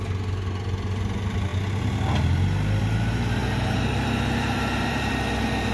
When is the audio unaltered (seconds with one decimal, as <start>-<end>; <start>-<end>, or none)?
0.0-3.4; 5.1-5.7